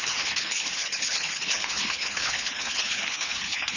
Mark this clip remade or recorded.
remade